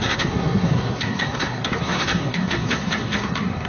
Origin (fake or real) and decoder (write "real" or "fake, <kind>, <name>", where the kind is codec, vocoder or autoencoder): fake, codec, SNAC